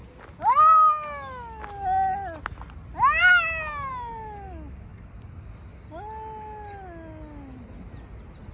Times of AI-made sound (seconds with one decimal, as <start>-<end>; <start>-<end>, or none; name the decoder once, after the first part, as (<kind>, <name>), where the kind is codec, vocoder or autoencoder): none